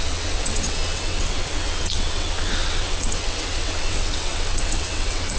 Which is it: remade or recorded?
remade